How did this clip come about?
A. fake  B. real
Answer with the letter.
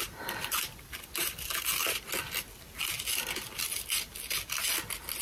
B